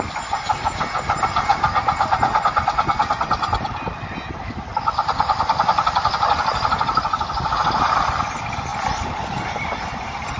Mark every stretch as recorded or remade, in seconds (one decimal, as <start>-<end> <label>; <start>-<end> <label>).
0.0-3.0 recorded; 3.0-7.5 remade; 7.5-8.7 recorded; 8.7-10.4 remade